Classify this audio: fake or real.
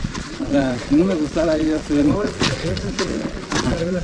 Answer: fake